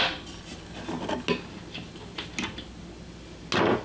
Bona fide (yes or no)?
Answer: yes